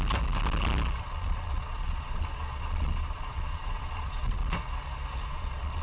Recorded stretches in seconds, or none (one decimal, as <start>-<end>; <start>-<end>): 0.0-1.0; 4.4-5.3